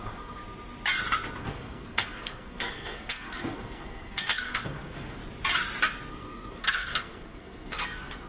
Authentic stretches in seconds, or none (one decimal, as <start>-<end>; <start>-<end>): 0.4-1.4; 5.2-6.1